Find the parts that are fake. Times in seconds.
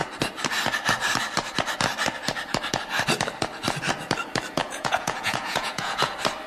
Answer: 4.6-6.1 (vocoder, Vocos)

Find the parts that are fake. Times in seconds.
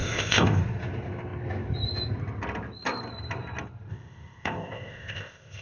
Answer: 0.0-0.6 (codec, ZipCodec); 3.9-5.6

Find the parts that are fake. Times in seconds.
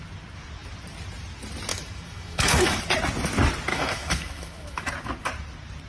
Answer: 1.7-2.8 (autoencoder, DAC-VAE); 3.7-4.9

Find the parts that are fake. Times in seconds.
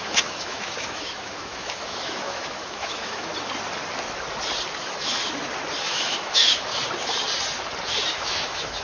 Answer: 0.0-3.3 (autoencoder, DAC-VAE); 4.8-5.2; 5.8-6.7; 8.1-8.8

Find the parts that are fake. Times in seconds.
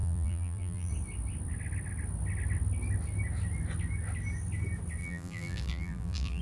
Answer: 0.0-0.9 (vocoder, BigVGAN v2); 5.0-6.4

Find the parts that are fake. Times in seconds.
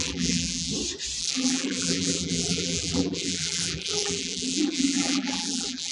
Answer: 0.0-0.7 (vocoder, BigVGAN v2); 1.2-5.9